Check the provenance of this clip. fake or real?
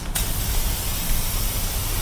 real